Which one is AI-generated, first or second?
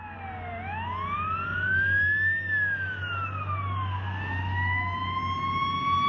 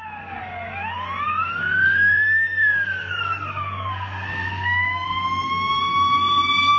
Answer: second